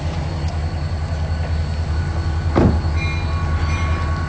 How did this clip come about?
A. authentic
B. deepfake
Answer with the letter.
A